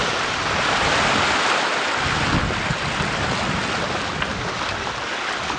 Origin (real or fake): real